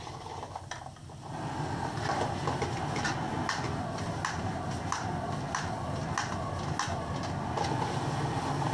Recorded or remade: recorded